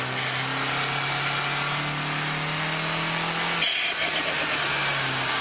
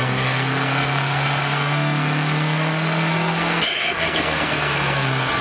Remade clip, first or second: second